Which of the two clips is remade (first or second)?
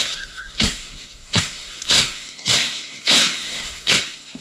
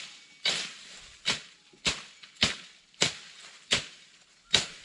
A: first